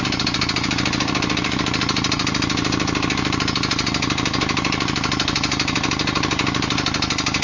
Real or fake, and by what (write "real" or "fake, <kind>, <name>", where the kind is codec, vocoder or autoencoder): real